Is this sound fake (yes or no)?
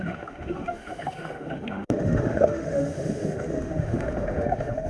yes